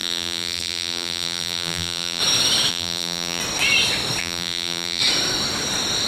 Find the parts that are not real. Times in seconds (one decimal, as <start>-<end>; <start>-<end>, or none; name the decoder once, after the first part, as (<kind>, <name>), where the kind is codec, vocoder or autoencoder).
0.0-2.2 (vocoder, BigVGAN v2); 2.7-3.4; 4.2-5.0